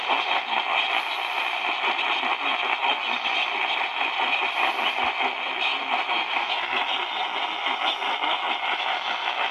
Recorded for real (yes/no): yes